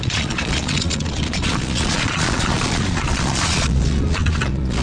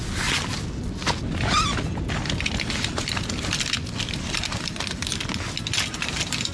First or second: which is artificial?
first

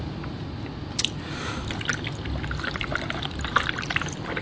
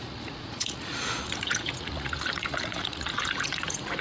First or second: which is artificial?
second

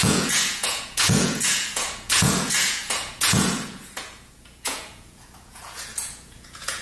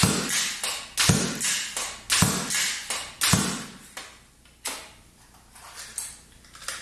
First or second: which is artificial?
first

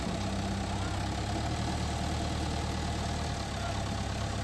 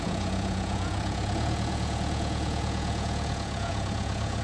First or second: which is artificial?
second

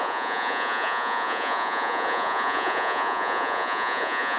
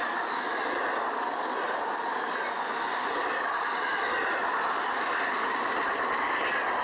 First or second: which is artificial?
first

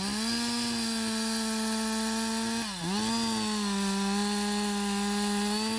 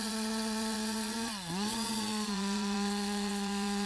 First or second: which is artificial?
second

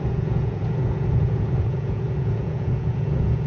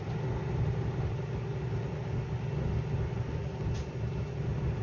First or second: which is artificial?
first